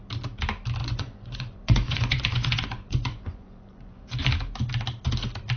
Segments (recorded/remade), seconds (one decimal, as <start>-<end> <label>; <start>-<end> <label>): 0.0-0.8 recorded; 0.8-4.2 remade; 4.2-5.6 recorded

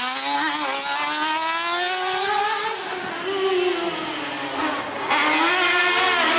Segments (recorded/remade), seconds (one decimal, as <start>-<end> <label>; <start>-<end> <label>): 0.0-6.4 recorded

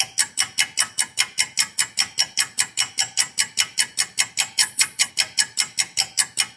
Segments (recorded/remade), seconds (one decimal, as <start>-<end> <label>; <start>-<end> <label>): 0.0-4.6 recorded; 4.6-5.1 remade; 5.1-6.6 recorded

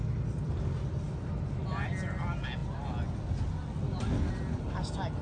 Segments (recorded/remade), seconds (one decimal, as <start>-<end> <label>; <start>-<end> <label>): 0.0-5.2 recorded